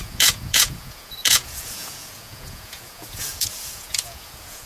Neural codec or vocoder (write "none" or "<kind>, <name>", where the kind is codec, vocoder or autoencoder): vocoder, Vocos